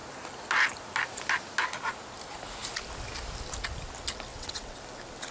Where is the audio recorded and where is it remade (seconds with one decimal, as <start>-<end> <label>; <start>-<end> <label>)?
0.0-4.3 recorded; 4.3-4.8 remade; 4.8-5.3 recorded